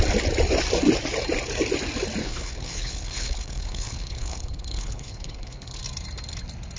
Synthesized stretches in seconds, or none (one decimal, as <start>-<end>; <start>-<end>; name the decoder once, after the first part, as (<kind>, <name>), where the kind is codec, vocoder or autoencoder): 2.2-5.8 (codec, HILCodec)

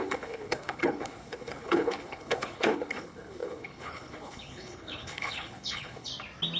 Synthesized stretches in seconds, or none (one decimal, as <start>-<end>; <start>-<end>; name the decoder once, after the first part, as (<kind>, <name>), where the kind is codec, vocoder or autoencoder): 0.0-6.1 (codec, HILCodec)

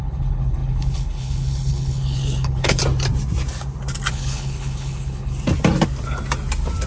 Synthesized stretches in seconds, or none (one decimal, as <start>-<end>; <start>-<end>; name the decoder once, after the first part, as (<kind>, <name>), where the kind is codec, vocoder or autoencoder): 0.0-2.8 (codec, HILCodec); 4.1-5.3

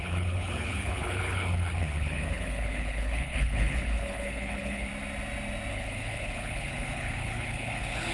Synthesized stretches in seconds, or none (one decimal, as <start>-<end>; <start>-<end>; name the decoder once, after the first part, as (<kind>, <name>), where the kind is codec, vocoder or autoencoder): 0.0-4.9 (codec, HILCodec); 5.7-8.1

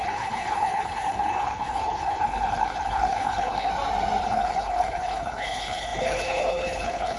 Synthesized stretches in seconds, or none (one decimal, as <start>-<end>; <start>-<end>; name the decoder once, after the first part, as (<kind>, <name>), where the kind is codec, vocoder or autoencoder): 0.0-3.7 (codec, HILCodec); 4.2-7.2

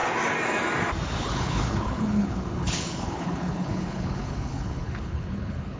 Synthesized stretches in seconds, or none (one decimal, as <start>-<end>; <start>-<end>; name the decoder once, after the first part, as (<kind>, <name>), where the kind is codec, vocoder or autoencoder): 1.2-5.8 (codec, HILCodec)